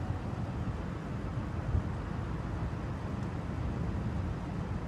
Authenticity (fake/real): real